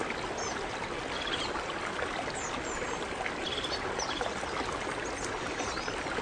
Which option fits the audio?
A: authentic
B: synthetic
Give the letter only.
A